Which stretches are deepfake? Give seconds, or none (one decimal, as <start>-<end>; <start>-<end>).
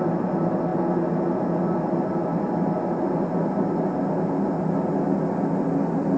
none